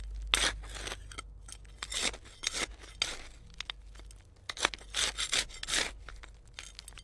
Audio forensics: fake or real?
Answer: real